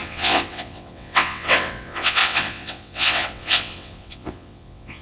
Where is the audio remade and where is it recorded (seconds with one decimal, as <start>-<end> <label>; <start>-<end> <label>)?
0.0-5.0 remade